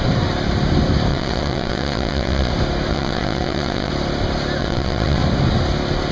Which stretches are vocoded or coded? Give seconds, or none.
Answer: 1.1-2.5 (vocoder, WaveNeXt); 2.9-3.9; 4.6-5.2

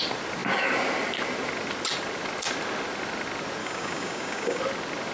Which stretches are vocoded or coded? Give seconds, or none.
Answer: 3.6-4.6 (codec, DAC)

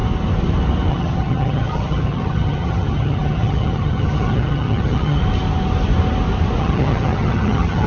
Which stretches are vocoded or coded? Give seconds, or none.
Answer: 0.9-5.2 (vocoder, HiFi-GAN); 6.6-7.9

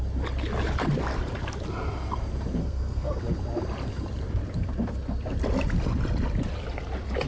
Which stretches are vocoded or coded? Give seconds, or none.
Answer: 2.6-3.2 (codec, SNAC)

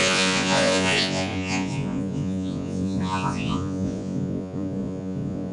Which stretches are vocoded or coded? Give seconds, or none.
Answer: 0.0-5.5 (vocoder, Vocos)